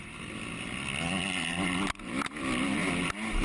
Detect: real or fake real